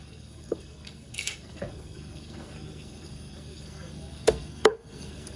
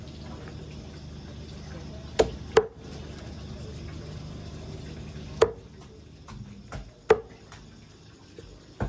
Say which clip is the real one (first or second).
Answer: second